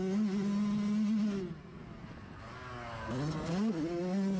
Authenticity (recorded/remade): recorded